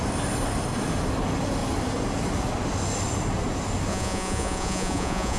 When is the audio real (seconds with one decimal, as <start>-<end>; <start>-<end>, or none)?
0.0-3.9